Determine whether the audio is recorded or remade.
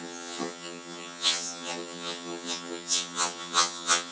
remade